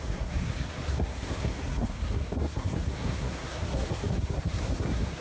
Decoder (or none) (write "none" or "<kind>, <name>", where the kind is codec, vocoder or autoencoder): codec, SNAC